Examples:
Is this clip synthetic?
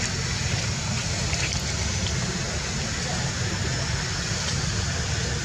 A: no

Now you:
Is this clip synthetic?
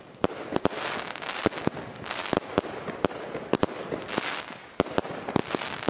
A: no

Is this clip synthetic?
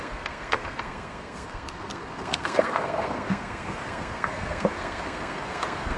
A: yes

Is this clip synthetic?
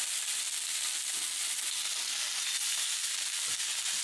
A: no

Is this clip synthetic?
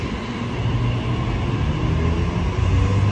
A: no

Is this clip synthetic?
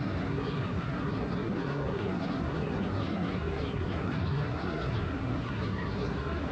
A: yes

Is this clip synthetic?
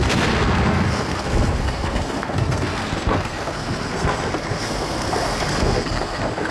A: yes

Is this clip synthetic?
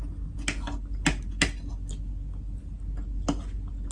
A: no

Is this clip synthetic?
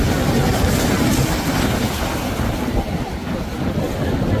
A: no